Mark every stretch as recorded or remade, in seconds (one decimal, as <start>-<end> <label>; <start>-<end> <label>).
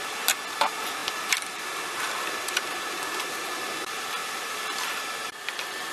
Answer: 0.0-1.0 recorded; 1.0-2.3 remade; 2.3-4.2 recorded; 4.2-5.0 remade; 5.0-5.9 recorded